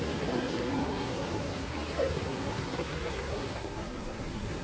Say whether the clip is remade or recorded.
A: remade